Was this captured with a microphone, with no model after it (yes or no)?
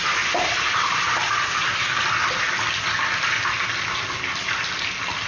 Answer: yes